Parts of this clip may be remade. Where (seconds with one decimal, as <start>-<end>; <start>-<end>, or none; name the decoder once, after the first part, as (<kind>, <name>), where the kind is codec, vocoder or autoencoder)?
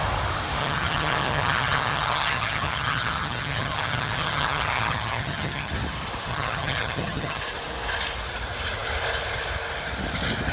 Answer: 0.6-5.7 (vocoder, HiFi-GAN); 6.3-7.4